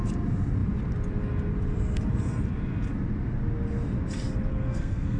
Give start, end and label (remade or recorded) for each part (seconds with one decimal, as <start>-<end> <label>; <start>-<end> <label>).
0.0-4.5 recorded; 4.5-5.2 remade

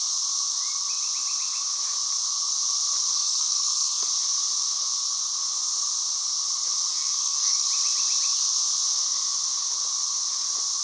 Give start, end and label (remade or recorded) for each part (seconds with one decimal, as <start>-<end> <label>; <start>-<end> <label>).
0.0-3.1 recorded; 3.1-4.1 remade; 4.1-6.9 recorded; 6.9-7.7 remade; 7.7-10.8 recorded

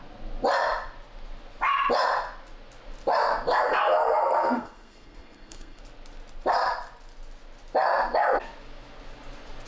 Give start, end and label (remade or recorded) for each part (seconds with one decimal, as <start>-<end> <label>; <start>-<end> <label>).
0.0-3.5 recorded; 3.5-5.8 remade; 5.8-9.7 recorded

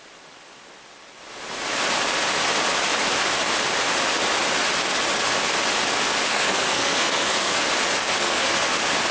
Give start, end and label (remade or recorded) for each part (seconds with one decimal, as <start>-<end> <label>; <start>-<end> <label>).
0.0-6.3 recorded; 6.3-7.6 remade; 7.6-8.2 recorded; 8.2-8.7 remade; 8.7-9.1 recorded

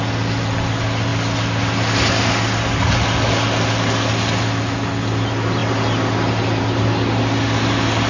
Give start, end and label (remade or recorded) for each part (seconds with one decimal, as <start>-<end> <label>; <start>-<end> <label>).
0.0-8.1 recorded

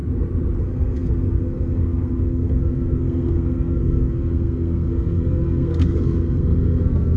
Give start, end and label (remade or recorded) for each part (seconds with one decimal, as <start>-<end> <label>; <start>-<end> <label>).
0.0-0.6 recorded; 0.6-7.2 remade

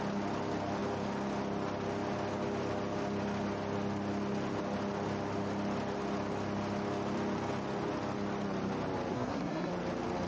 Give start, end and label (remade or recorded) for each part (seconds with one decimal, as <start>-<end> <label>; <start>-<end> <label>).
0.0-9.1 recorded; 9.1-9.7 remade; 9.7-10.3 recorded

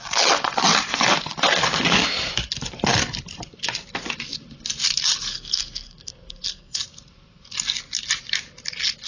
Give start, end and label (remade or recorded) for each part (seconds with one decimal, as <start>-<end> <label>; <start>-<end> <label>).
0.0-5.3 recorded; 5.3-6.8 remade; 6.8-9.1 recorded